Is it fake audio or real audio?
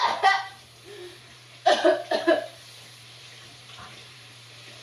fake